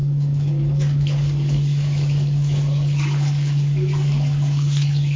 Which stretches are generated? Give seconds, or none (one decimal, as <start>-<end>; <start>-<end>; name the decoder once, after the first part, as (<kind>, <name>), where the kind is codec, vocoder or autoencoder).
0.0-5.2 (codec, DAC)